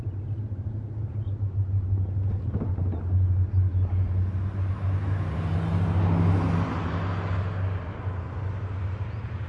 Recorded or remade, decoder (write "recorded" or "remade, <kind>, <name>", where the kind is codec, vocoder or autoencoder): recorded